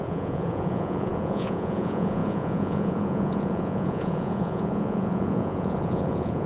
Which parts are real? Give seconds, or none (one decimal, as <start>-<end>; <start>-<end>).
none